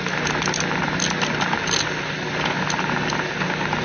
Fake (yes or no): no